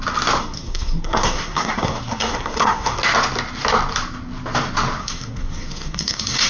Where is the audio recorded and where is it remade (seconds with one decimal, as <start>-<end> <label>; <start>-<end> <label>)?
0.0-0.4 recorded; 0.4-3.0 remade; 3.0-5.0 recorded; 5.0-6.5 remade